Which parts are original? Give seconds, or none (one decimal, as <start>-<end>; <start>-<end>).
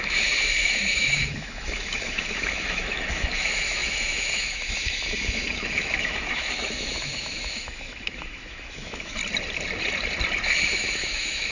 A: 9.2-10.5